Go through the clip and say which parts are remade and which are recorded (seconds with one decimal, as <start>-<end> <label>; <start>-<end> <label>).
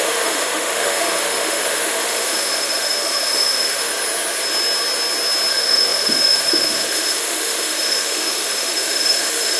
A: 0.0-3.9 remade; 3.9-5.5 recorded; 5.5-9.6 remade